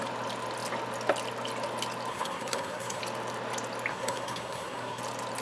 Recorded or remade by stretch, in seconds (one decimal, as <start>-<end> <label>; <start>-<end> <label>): 0.0-2.1 recorded; 2.1-3.0 remade; 3.0-3.9 recorded; 3.9-5.0 remade; 5.0-5.4 recorded